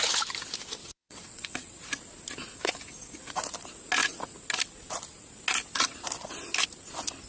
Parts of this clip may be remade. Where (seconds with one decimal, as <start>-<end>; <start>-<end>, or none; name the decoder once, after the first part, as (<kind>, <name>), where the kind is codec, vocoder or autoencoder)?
0.8-1.8 (vocoder, WaveNeXt)